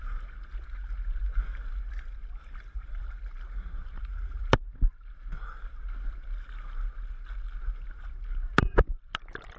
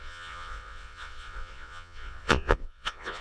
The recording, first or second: first